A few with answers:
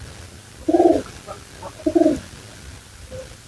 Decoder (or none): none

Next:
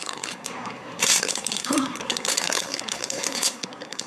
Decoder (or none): codec, SNAC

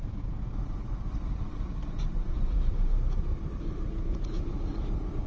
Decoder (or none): vocoder, BigVGAN v2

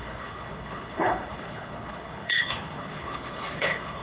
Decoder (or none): codec, HILCodec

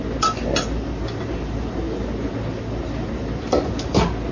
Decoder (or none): none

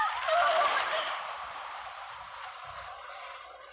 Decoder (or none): vocoder, BigVGAN v2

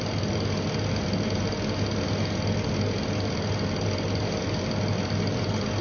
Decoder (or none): none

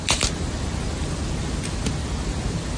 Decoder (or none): none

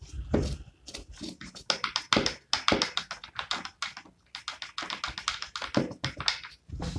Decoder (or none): none